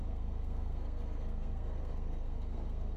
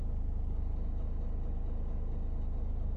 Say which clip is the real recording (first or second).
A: second